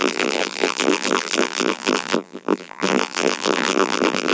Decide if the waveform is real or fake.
fake